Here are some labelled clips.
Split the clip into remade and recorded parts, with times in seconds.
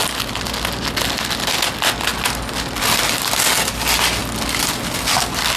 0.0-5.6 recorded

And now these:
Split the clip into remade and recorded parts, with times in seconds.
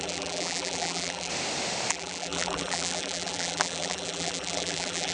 0.0-1.3 remade; 1.3-1.9 recorded; 1.9-5.1 remade